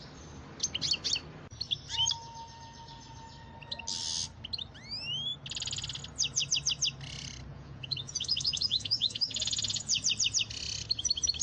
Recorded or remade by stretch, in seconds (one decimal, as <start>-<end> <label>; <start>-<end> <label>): 0.0-7.5 recorded; 7.5-10.0 remade; 10.0-11.4 recorded